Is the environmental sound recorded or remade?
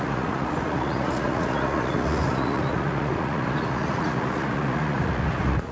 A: remade